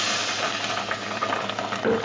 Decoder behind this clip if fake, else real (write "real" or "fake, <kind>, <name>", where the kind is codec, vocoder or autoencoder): real